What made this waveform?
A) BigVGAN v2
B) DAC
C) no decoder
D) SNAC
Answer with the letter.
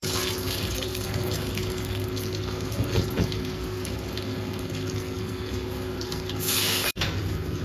D